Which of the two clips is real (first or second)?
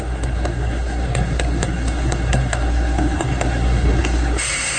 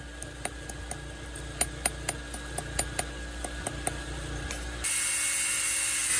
second